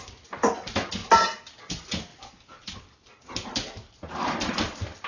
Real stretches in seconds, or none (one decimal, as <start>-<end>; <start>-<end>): 0.0-5.1